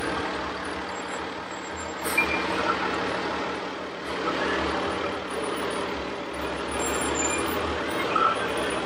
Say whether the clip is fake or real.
real